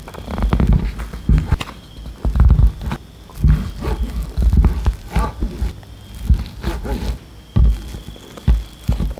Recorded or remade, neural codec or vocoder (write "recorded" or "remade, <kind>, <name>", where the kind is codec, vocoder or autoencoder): recorded